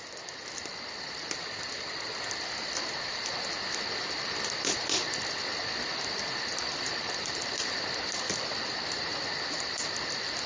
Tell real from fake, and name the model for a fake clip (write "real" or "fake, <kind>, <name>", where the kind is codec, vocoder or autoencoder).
real